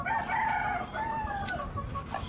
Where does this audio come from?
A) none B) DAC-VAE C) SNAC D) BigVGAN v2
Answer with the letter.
A